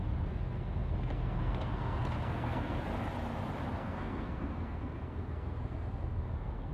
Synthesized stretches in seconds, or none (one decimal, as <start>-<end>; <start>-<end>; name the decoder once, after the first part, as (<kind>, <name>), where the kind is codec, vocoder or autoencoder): 0.0-2.9 (codec, SNAC); 3.7-6.7